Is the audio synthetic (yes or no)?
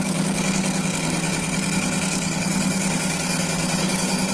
yes